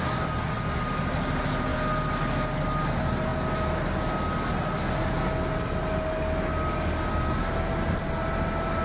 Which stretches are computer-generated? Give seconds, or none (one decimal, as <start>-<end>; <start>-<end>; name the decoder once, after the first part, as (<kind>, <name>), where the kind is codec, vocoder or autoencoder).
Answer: none